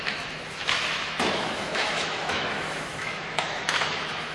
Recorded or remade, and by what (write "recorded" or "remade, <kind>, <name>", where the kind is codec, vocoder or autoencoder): remade, autoencoder, DAC-VAE